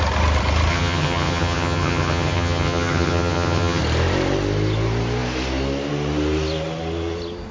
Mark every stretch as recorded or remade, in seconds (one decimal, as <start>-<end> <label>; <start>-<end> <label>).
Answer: 0.0-0.7 recorded; 0.7-3.8 remade; 3.8-7.5 recorded